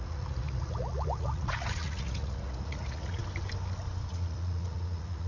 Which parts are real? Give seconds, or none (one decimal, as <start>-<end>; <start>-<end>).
3.2-4.1